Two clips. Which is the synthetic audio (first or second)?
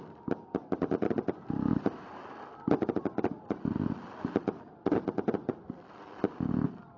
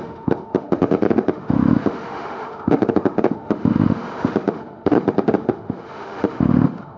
second